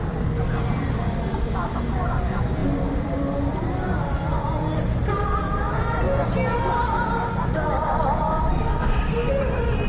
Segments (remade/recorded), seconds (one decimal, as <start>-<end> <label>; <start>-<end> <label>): 0.0-8.5 recorded; 8.5-9.3 remade; 9.3-9.9 recorded